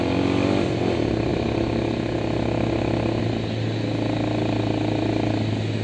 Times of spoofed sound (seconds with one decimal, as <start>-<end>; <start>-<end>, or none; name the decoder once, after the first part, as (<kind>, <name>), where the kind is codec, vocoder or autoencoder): none